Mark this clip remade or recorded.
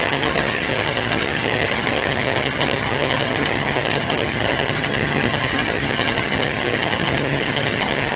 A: remade